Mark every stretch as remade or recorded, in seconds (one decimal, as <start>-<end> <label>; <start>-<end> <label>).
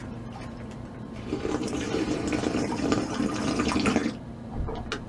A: 0.0-3.1 remade; 3.1-5.1 recorded